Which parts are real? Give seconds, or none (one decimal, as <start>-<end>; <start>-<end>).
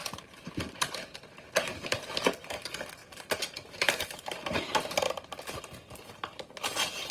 1.9-3.0; 5.4-7.1